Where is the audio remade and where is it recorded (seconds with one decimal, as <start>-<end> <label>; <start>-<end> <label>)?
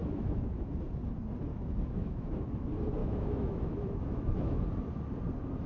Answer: 0.0-0.7 remade; 0.7-1.5 recorded; 1.5-2.4 remade; 2.4-3.0 recorded; 3.0-4.6 remade; 4.6-5.7 recorded